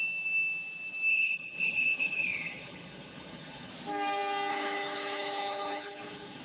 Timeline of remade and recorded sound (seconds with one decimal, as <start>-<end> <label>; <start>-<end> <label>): 0.0-1.1 recorded; 1.1-3.7 remade; 3.7-4.5 recorded; 4.5-6.4 remade